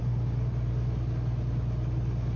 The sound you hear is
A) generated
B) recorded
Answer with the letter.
B